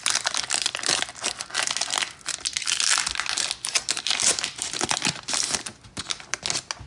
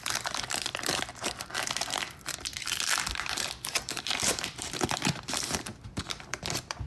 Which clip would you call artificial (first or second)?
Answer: second